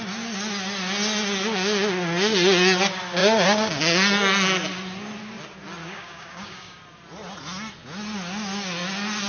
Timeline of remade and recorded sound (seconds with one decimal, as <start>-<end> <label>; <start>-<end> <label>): 0.0-5.8 recorded; 5.8-6.8 remade; 6.8-9.3 recorded